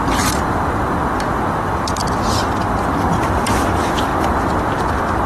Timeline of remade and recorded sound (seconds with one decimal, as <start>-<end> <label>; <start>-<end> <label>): 0.0-2.0 remade; 2.0-2.6 recorded; 2.6-5.3 remade